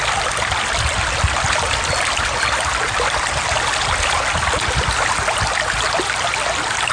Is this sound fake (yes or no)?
no